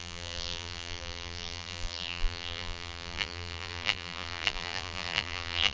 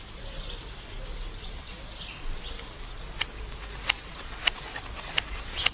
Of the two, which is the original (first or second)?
second